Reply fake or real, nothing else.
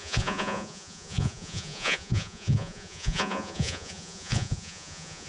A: fake